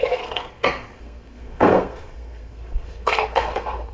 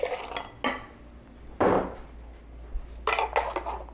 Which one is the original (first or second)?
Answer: second